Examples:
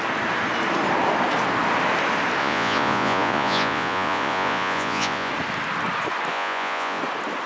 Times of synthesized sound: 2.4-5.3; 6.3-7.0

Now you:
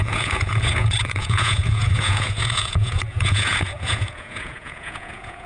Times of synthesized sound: 0.0-5.5

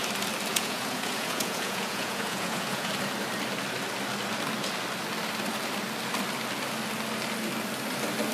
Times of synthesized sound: 0.5-2.9

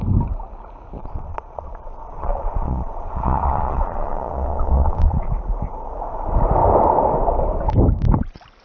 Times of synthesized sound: 1.0-5.3